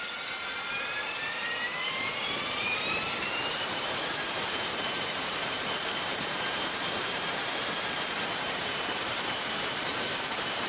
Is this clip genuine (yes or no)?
no